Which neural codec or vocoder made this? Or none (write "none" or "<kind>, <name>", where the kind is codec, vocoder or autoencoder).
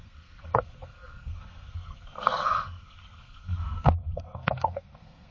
codec, SNAC